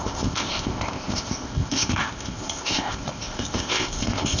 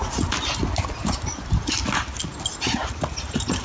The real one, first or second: second